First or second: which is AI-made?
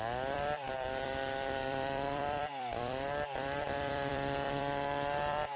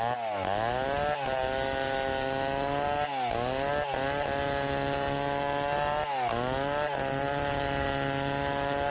first